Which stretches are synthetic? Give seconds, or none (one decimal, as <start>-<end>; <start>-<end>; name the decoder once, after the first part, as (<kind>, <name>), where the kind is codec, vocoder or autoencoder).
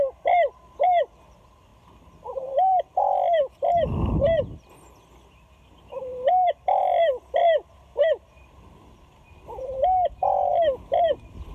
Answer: 0.0-9.8 (vocoder, BigVGAN v2); 10.8-11.5